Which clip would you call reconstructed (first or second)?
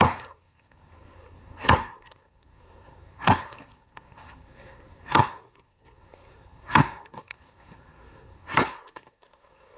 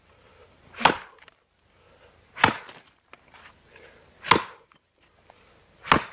first